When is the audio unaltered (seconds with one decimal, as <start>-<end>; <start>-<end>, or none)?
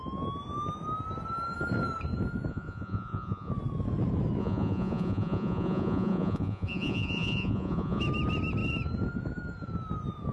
0.0-2.5; 3.5-4.4; 8.0-10.3